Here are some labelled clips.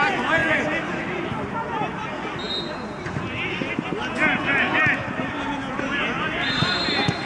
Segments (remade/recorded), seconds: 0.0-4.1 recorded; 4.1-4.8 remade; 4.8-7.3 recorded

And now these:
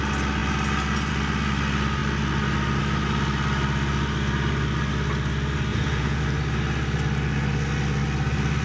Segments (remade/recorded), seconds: 0.0-5.7 recorded; 5.7-6.2 remade; 6.2-8.6 recorded

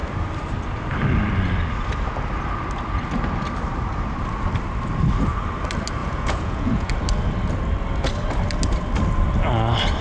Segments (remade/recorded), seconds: 0.0-6.0 recorded; 6.0-6.9 remade; 6.9-10.0 recorded

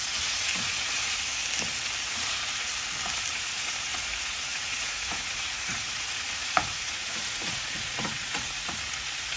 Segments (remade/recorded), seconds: 0.0-1.4 remade; 1.4-2.0 recorded; 2.0-2.7 remade; 2.7-3.3 recorded; 3.3-9.4 remade

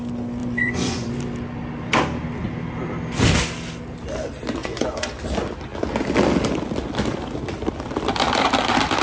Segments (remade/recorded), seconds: 0.0-0.4 recorded; 0.4-1.1 remade; 1.1-4.6 recorded; 4.6-5.1 remade; 5.1-9.0 recorded

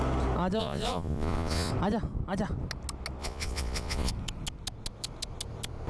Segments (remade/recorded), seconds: 0.0-0.6 recorded; 0.6-1.7 remade; 1.7-3.2 recorded; 3.2-4.1 remade; 4.1-5.9 recorded

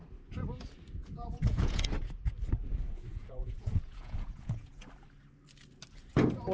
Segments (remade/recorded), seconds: 0.0-1.0 recorded; 1.0-1.9 remade; 1.9-3.1 recorded; 3.1-4.9 remade; 4.9-6.5 recorded